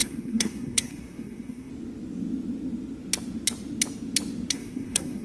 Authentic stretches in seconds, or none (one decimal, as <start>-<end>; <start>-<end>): 1.7-4.5